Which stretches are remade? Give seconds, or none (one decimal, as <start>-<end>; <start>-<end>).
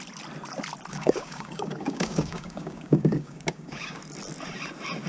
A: 0.9-4.0